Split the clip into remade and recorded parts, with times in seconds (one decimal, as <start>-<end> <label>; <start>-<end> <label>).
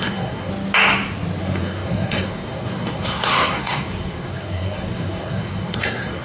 0.0-0.5 remade; 0.5-1.4 recorded; 1.4-6.2 remade